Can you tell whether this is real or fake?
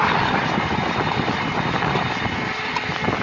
real